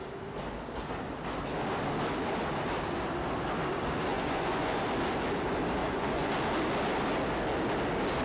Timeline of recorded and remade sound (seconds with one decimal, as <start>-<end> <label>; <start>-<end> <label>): 0.0-4.1 recorded; 4.1-4.8 remade; 4.8-5.8 recorded; 5.8-6.3 remade; 6.3-8.2 recorded